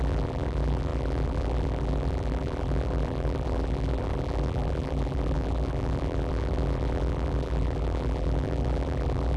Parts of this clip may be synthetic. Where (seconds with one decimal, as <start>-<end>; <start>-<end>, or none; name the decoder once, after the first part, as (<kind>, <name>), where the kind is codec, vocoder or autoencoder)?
0.0-9.4 (vocoder, BigVGAN v2)